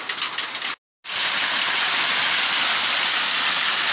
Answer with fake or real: real